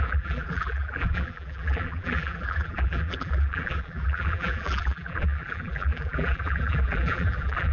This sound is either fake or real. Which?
fake